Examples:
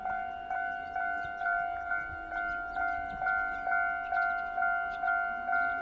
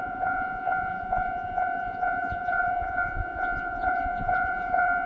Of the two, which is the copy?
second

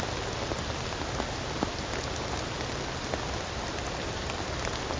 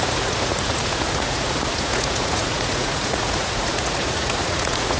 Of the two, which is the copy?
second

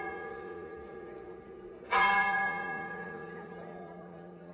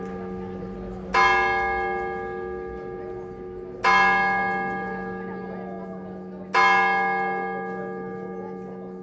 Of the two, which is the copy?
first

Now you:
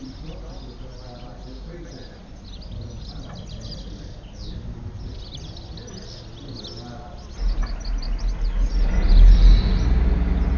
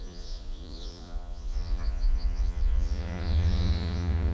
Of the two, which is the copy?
second